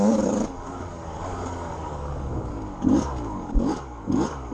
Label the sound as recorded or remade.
remade